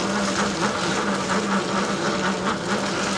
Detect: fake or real real